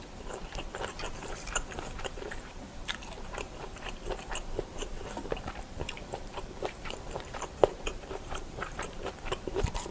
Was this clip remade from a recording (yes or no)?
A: yes